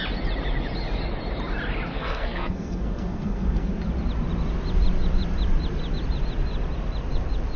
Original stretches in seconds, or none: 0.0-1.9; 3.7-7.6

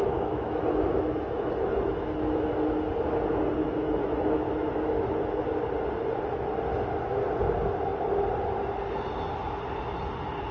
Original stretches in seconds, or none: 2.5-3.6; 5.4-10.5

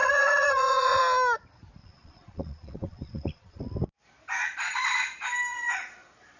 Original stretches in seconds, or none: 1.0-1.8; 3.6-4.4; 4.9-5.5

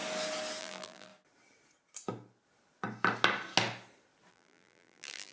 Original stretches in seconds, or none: 0.0-0.6; 1.1-4.3